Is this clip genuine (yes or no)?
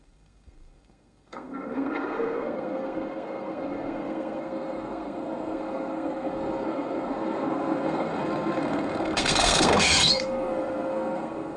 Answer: no